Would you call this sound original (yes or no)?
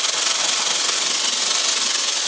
yes